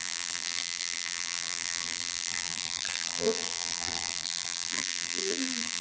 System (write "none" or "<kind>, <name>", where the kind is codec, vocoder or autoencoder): vocoder, BigVGAN v2